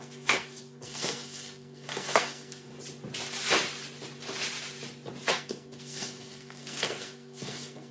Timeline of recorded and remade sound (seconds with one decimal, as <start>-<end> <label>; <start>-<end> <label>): 0.0-2.7 remade; 2.7-5.3 recorded; 5.3-7.9 remade

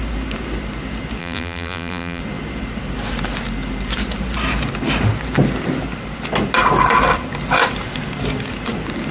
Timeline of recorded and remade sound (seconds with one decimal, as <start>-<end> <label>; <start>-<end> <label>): 0.0-1.2 recorded; 1.2-2.2 remade; 2.2-9.1 recorded

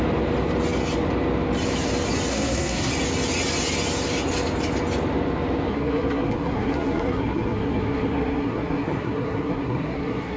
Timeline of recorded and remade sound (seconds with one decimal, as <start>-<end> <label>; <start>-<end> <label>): 0.0-2.3 recorded; 2.3-2.9 remade; 2.9-5.7 recorded; 5.7-10.4 remade

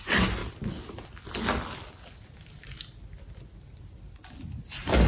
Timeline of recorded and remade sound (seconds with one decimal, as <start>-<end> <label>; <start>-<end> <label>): 0.0-5.1 recorded

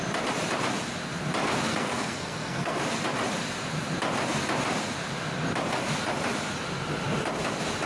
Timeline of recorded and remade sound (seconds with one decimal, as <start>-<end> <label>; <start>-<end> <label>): 0.0-1.7 recorded; 1.7-2.8 remade; 2.8-7.9 recorded